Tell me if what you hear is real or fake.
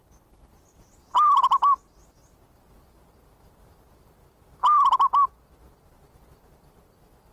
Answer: real